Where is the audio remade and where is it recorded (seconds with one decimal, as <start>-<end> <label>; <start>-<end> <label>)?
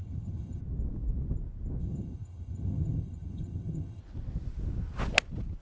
0.0-0.6 remade; 0.6-1.8 recorded; 1.8-4.0 remade; 4.0-5.6 recorded